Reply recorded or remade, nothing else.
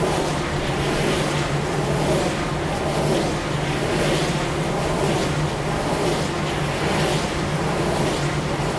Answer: recorded